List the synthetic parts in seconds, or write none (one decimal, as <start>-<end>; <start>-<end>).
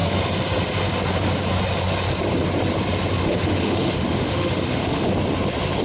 3.2-5.1